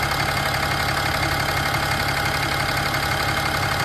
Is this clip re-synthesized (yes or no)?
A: no